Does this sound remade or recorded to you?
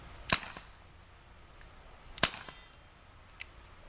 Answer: recorded